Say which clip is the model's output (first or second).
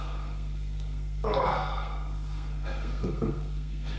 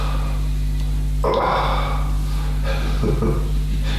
first